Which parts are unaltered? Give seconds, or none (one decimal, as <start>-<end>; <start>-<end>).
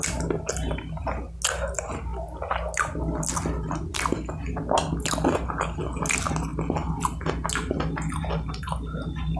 0.0-9.4